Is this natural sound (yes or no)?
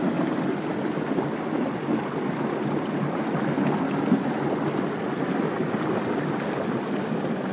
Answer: yes